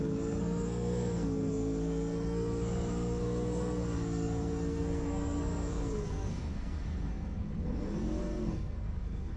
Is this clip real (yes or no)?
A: no